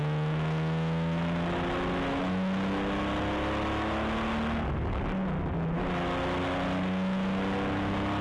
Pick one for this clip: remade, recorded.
recorded